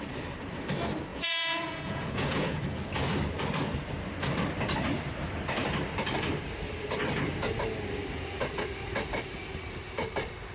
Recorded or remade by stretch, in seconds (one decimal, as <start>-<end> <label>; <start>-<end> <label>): 0.0-1.1 recorded; 1.1-2.6 remade; 2.6-10.5 recorded

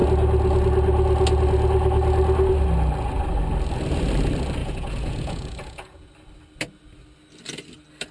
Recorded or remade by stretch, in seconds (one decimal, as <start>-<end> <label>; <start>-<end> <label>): 0.0-4.6 recorded; 4.6-6.1 remade; 6.1-8.1 recorded